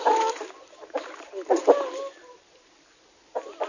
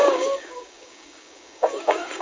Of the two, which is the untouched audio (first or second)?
first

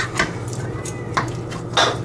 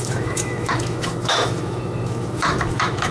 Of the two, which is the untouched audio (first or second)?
first